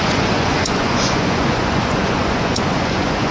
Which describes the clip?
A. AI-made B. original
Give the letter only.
A